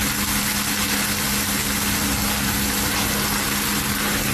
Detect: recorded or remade recorded